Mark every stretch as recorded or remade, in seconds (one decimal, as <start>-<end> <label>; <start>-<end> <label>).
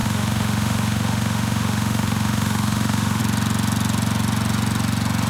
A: 0.0-3.2 remade; 3.2-5.3 recorded